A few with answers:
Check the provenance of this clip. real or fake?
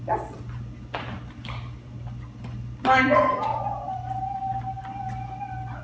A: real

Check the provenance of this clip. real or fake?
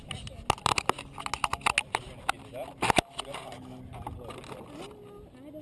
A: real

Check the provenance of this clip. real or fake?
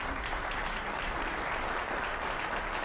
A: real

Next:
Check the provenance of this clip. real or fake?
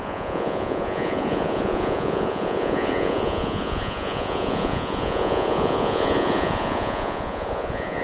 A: fake